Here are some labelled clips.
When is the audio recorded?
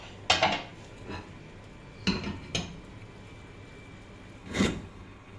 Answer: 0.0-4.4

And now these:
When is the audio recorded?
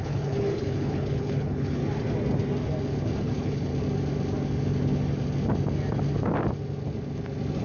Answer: 1.8-3.2; 3.7-7.6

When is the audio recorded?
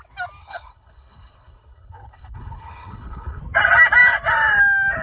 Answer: 0.0-0.4; 3.4-5.0